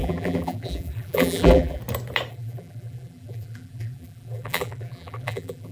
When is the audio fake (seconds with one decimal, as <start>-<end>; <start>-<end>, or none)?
0.0-1.8; 2.3-5.7